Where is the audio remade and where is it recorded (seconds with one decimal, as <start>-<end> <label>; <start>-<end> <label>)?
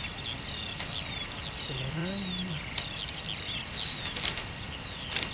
0.0-5.3 recorded